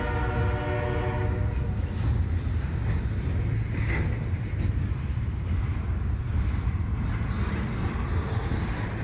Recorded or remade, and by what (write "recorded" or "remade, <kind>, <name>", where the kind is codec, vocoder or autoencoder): recorded